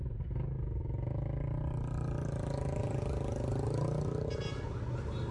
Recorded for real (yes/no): yes